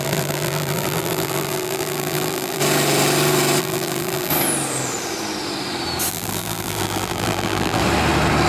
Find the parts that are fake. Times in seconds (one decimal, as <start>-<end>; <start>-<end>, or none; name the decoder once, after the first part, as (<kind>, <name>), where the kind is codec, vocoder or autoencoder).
0.0-2.6 (vocoder, BigVGAN v2); 3.6-4.3; 6.1-7.8